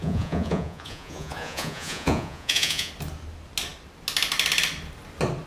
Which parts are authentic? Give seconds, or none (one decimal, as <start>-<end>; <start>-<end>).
2.9-5.5